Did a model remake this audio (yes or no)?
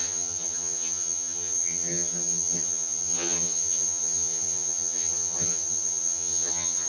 yes